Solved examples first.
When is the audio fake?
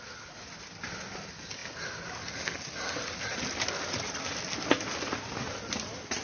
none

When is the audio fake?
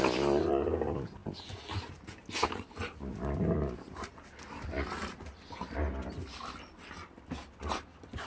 none